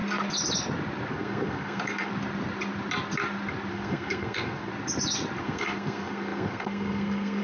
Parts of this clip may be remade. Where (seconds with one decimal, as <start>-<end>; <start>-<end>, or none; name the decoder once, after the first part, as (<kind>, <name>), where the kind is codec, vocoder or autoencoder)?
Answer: 1.1-2.1 (codec, SNAC); 3.7-4.7; 5.4-7.4